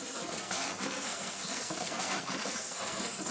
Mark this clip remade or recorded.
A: remade